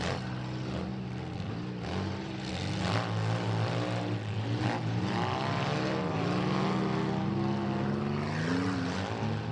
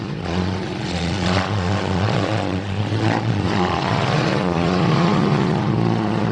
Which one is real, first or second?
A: first